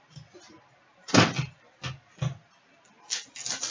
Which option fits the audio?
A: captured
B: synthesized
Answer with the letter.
A